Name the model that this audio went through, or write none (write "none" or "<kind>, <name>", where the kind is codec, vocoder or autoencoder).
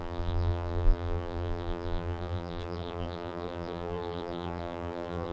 vocoder, BigVGAN v2